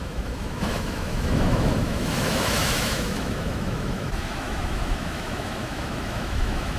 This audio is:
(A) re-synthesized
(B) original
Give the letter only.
A